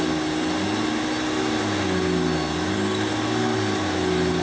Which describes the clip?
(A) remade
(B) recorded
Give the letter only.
B